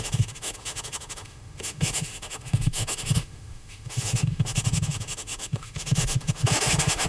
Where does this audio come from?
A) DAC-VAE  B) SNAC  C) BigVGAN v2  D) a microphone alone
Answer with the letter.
A